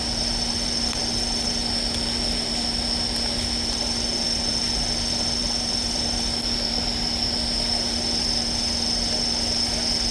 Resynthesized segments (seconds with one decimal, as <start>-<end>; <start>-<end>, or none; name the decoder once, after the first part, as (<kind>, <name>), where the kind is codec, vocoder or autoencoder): none